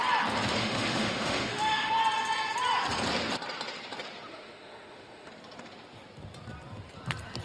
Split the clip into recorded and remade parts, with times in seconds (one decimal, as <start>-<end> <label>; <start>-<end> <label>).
0.0-0.6 recorded; 0.6-1.9 remade; 1.9-4.3 recorded; 4.3-5.3 remade; 5.3-7.4 recorded